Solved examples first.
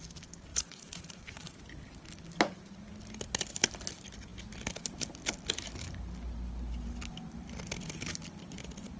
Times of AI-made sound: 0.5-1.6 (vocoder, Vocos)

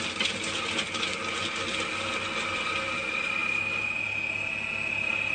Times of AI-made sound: none

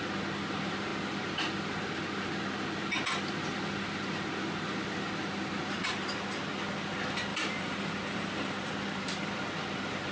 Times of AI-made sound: 7.3-8.7 (vocoder, BigVGAN v2)

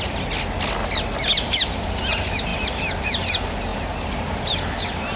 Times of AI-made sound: none

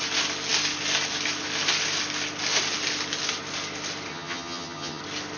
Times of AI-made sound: 4.1-5.0 (vocoder, HiFi-GAN)